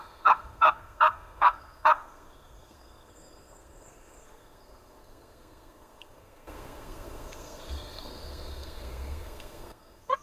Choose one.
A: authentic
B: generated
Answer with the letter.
B